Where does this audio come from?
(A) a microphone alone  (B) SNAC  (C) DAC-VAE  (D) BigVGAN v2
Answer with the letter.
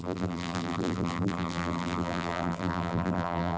D